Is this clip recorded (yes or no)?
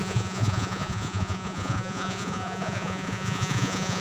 no